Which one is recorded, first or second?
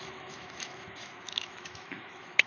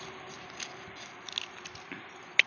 second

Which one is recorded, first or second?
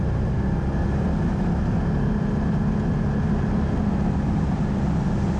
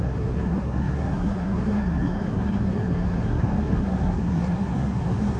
first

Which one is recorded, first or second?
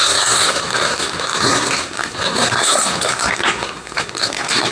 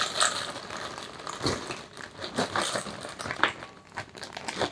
second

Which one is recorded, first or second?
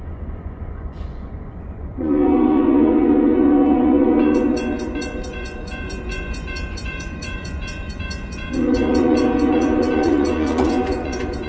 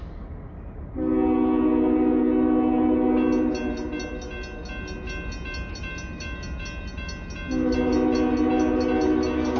second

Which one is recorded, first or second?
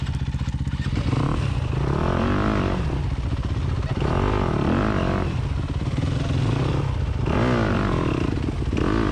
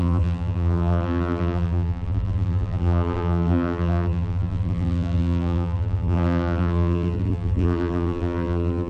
first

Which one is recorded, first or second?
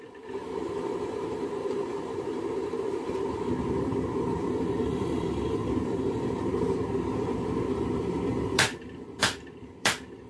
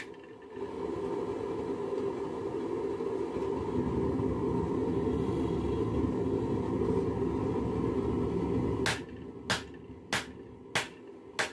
second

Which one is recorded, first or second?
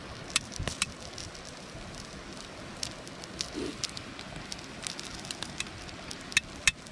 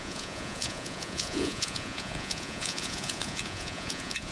first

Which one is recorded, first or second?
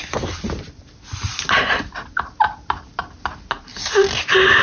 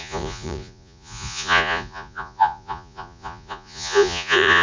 first